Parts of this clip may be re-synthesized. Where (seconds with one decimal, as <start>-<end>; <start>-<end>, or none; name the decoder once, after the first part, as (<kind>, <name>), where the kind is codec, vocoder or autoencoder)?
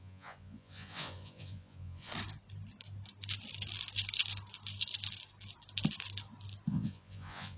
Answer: 0.0-2.1 (vocoder, Vocos); 6.7-7.6